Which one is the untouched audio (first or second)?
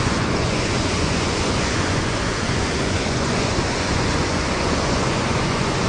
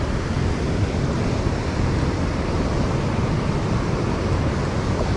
second